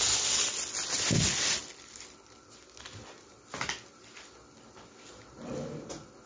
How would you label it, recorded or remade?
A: recorded